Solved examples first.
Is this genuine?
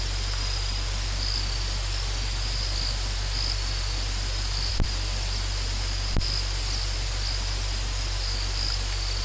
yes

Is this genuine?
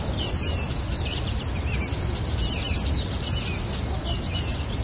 yes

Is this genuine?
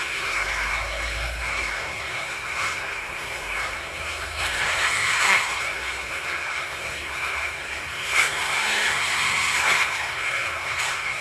no